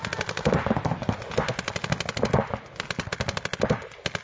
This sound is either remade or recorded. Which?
recorded